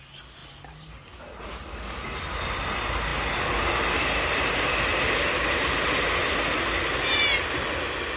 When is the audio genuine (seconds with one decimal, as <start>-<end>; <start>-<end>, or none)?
0.0-8.2